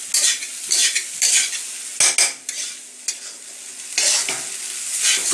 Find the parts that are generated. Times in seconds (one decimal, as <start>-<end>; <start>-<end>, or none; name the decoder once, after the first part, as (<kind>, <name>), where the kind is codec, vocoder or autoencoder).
0.8-1.5 (vocoder, BigVGAN v2)